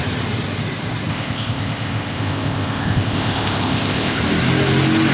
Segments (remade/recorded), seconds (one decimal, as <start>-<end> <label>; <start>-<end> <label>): 0.0-1.1 recorded; 1.1-4.2 remade; 4.2-5.1 recorded